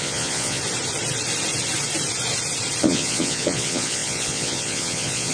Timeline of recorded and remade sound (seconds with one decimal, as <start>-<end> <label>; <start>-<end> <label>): 0.0-0.6 remade; 0.6-2.8 recorded; 2.8-5.3 remade